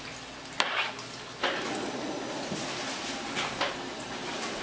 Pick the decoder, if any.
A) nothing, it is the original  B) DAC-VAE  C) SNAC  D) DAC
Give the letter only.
A